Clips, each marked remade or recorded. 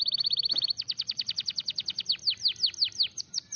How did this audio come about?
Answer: recorded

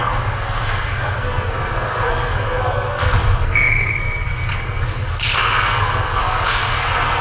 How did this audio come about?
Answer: remade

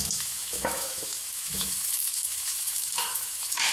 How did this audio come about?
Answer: remade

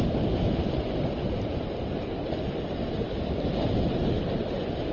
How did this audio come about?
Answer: recorded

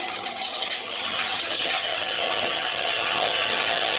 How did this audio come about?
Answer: remade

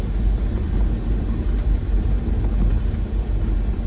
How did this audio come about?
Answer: recorded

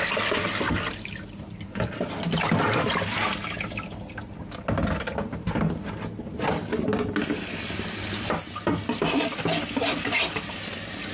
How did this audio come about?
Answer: recorded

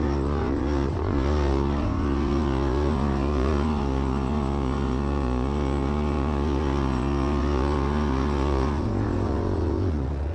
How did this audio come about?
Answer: remade